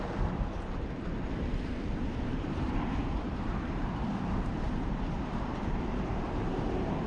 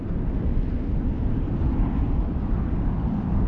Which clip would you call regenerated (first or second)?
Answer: first